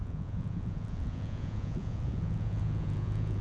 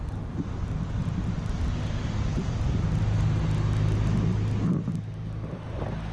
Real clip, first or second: second